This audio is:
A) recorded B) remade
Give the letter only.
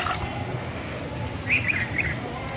A